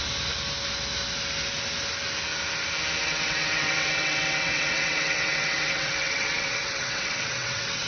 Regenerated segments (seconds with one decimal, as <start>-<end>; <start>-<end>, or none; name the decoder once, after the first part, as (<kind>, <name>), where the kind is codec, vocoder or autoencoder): 3.0-7.9 (vocoder, WaveNeXt)

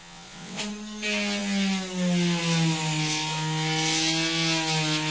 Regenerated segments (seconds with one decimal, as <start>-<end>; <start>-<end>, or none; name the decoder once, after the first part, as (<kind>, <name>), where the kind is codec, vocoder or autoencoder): 0.0-0.6 (vocoder, WaveNeXt)

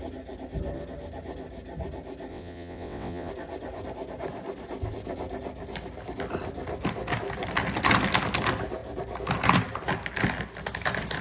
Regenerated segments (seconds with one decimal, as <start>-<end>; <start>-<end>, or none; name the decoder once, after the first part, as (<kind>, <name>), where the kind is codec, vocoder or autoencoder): 2.3-3.3 (vocoder, WaveNeXt)

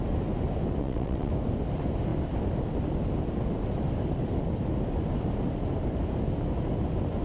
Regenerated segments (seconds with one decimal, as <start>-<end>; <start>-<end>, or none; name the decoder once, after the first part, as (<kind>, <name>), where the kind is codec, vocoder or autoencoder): 0.8-1.3 (vocoder, WaveNeXt)

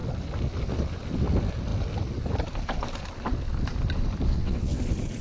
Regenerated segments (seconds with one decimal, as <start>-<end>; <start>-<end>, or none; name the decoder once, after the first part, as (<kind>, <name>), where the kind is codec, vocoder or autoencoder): 4.3-4.8 (vocoder, WaveNeXt)

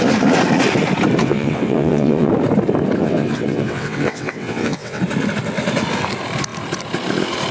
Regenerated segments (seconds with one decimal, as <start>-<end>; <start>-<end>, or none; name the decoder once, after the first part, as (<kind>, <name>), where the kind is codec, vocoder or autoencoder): 1.2-2.3 (vocoder, WaveNeXt); 3.0-5.0

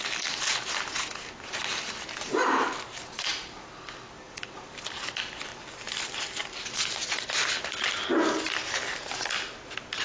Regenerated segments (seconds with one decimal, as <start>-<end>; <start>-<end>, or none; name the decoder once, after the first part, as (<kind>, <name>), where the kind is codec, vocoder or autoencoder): none